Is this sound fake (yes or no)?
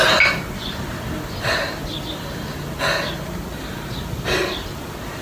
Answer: no